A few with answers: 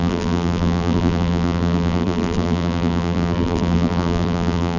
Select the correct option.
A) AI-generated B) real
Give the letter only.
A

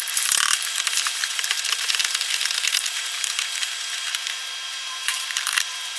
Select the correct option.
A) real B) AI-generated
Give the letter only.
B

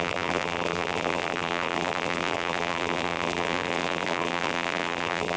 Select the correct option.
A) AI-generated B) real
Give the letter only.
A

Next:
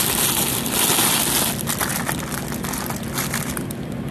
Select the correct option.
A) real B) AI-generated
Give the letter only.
A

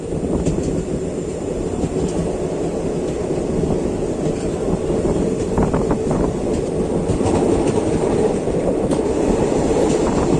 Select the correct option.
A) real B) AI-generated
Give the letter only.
A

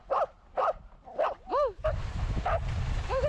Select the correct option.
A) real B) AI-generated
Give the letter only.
B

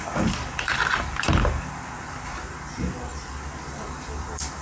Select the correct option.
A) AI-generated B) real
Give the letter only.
A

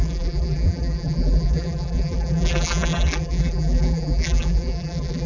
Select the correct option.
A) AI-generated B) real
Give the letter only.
A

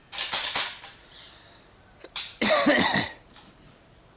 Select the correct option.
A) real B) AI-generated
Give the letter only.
B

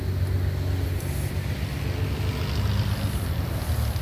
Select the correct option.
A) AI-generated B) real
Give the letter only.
B